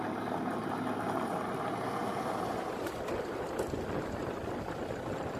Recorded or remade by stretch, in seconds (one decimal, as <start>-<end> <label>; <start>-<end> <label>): 0.0-5.4 recorded